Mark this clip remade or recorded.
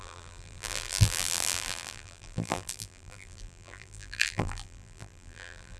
remade